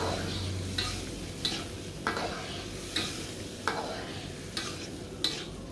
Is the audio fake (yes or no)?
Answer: no